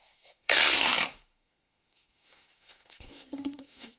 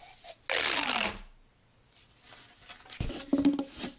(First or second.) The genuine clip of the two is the second